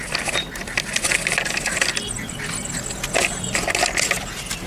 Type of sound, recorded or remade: recorded